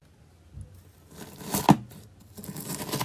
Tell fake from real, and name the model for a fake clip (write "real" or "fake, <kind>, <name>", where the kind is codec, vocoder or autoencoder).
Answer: real